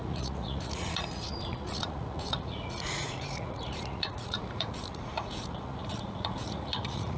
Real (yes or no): no